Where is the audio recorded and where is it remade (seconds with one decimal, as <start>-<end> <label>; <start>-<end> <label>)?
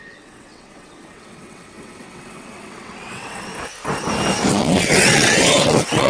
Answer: 0.0-3.5 remade; 3.5-4.5 recorded; 4.5-6.1 remade